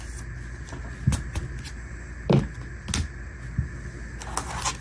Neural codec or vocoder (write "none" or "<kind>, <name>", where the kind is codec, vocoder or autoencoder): none